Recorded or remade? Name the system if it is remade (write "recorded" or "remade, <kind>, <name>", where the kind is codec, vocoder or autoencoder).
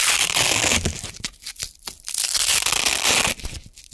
recorded